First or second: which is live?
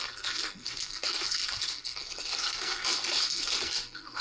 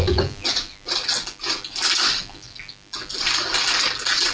second